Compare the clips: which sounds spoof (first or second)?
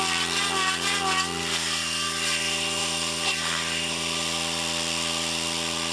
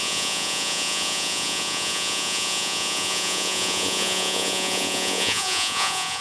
second